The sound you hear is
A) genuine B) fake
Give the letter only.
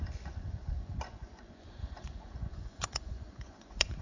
B